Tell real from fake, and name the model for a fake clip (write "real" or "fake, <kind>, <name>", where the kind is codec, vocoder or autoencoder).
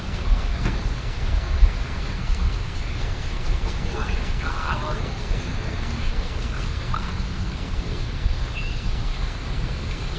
fake, codec, SNAC